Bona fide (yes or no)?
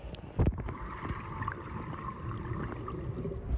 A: yes